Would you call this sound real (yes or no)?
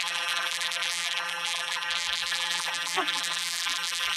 no